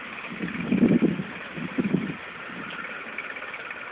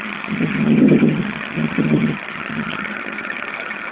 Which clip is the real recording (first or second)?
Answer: first